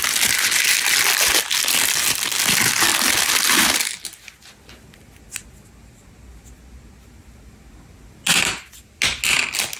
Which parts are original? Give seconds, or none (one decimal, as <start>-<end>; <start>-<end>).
0.0-9.8